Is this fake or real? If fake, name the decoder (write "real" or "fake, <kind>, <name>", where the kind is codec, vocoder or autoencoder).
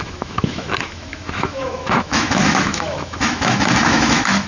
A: fake, autoencoder, DAC-VAE